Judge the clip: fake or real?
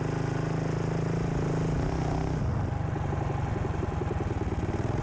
real